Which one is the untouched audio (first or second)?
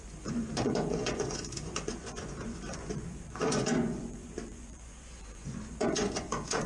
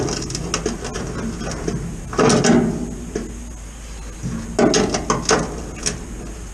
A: second